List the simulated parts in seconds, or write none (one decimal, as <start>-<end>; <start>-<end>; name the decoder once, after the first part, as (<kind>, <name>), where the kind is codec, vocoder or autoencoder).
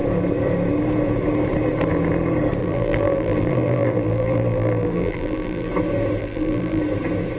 2.6-5.7 (vocoder, BigVGAN v2); 6.2-6.8